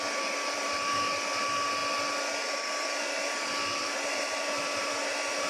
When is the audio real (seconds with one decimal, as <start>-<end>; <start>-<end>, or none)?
0.0-5.5